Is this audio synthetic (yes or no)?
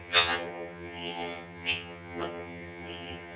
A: yes